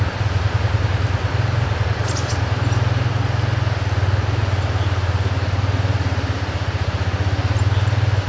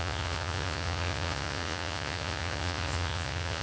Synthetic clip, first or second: second